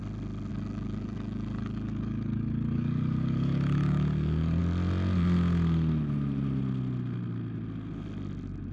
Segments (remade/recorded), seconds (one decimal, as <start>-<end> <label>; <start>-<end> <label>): 0.0-0.5 recorded; 0.5-4.6 remade; 4.6-8.7 recorded